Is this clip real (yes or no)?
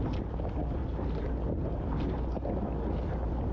yes